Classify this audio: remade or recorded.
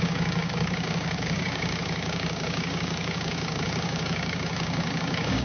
remade